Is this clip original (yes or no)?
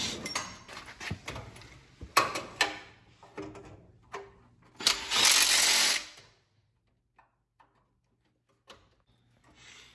yes